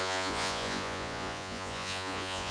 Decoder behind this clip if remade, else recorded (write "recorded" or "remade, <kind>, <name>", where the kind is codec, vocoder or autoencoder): remade, vocoder, Vocos